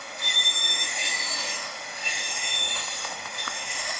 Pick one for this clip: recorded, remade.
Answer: remade